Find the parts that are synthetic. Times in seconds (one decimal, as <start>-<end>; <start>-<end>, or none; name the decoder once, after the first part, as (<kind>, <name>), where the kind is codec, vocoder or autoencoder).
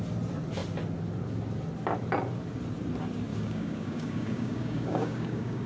3.3-5.7 (codec, DAC)